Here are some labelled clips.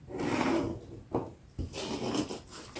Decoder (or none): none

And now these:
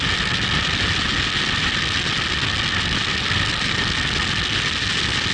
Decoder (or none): none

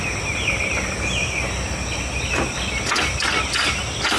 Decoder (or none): none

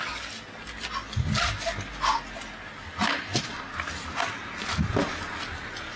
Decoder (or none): none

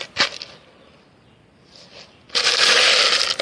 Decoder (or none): none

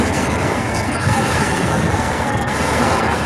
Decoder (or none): codec, SNAC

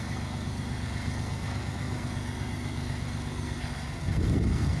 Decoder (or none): codec, SNAC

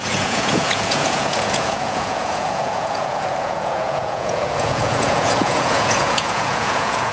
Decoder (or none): vocoder, Vocos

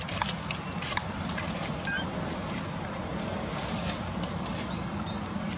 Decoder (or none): none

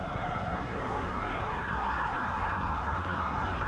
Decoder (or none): codec, SNAC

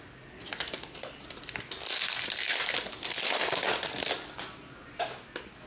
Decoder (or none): none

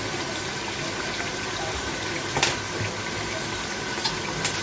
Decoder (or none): none